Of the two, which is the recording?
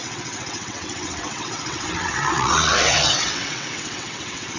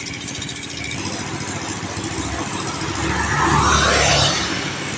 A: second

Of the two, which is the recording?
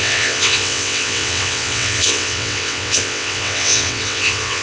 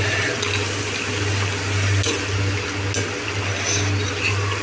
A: second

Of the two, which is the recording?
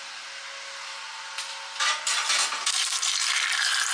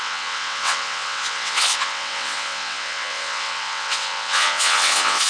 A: first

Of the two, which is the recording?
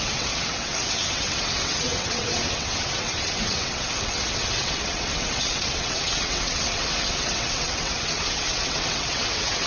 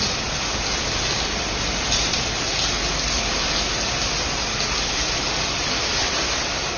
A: second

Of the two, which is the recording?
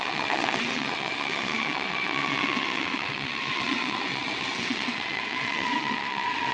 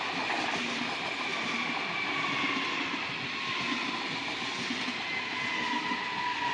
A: second